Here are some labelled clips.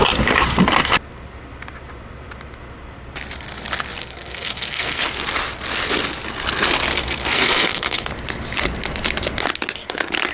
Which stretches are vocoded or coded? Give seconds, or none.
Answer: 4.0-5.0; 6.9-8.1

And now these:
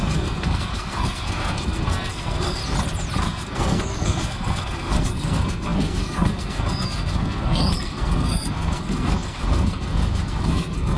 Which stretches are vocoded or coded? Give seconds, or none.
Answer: 0.0-2.6; 3.2-11.0

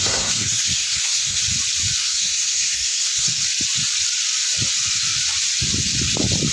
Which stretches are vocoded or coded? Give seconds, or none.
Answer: 0.0-1.4; 2.0-3.4

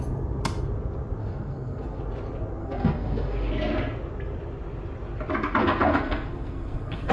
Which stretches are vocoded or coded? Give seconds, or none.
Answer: 1.2-2.0; 2.6-3.5; 5.6-7.1

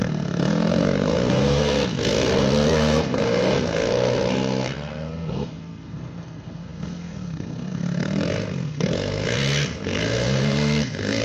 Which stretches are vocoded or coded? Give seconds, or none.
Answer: 0.0-11.2

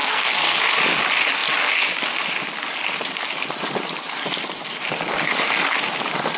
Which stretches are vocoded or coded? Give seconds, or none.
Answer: 0.0-0.6

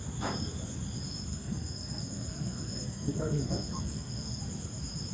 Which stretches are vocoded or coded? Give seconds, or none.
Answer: 1.3-4.4

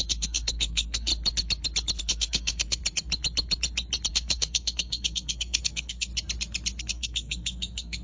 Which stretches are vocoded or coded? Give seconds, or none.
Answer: 0.0-1.1; 2.0-2.8; 4.1-6.1; 6.8-8.0